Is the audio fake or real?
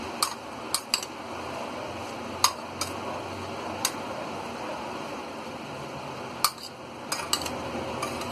real